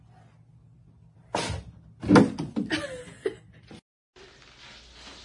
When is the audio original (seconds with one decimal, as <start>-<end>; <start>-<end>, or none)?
0.0-5.2